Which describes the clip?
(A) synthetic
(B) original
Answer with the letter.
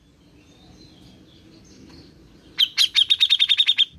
B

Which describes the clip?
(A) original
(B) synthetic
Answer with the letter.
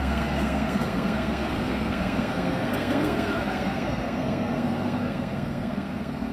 B